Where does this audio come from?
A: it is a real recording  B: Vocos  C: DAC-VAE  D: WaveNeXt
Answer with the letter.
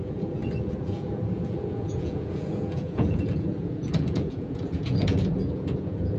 B